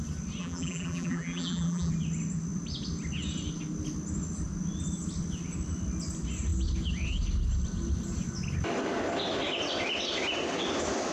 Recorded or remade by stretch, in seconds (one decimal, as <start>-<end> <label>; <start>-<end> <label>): 0.0-0.4 recorded; 0.4-1.9 remade; 1.9-11.1 recorded